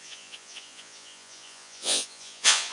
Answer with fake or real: fake